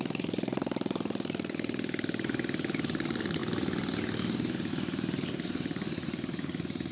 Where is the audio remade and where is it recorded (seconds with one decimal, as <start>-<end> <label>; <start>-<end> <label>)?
0.0-3.4 remade; 3.4-4.7 recorded; 4.7-6.9 remade